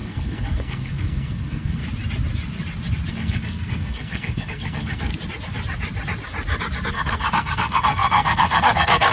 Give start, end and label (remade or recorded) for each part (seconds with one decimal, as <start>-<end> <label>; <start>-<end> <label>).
0.0-1.8 remade; 1.8-3.1 recorded; 3.1-5.1 remade; 5.1-6.9 recorded; 6.9-9.1 remade